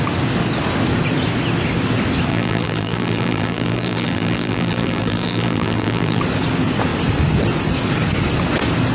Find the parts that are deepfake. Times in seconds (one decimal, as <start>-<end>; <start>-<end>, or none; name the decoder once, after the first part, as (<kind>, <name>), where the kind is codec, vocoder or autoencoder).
2.3-6.2 (vocoder, BigVGAN v2)